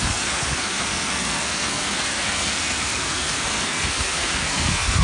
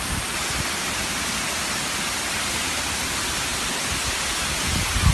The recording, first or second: second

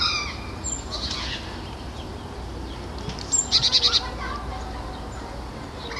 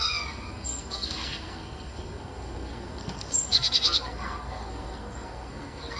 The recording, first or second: first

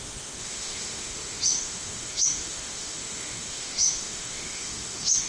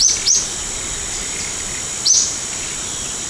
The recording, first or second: second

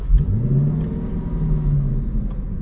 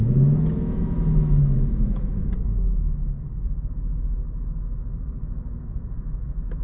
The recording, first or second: first